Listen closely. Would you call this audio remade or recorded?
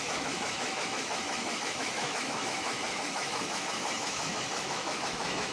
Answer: remade